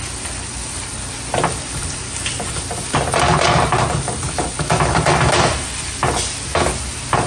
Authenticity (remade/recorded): recorded